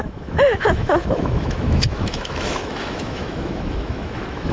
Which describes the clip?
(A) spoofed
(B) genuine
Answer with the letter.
A